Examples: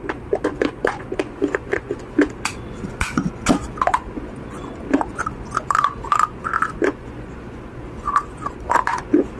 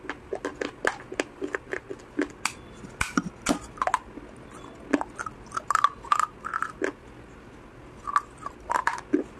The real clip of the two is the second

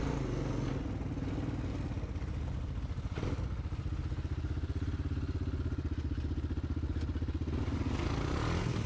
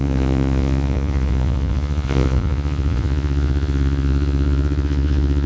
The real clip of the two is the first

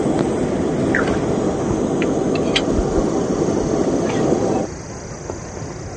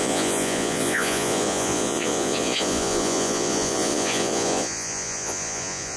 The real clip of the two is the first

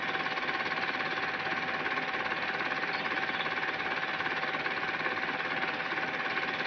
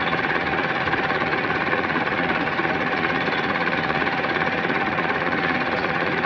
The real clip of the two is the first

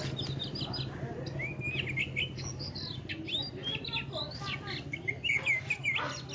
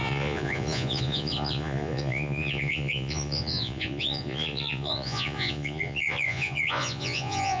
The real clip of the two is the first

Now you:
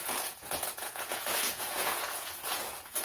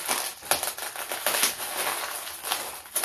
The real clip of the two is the second